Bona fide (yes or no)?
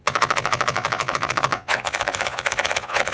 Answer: no